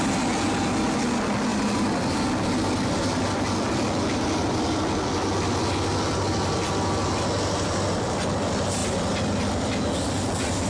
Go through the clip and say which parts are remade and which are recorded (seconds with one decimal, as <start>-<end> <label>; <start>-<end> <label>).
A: 0.0-10.7 recorded